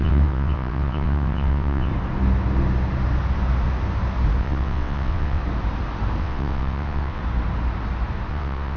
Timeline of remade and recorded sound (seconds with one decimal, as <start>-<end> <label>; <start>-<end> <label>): 0.0-1.9 remade; 1.9-4.4 recorded; 4.4-5.4 remade; 5.4-6.2 recorded; 6.2-7.2 remade; 7.2-8.3 recorded; 8.3-8.8 remade